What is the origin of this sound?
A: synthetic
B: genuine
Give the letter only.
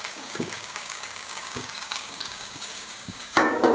A